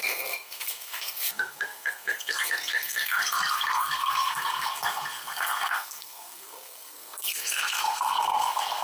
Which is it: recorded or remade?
remade